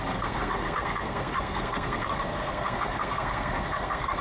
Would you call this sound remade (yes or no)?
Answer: yes